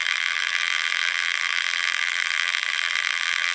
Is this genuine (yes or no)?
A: no